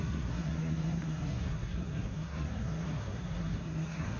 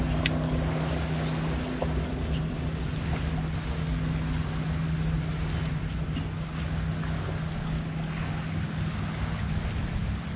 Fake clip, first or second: first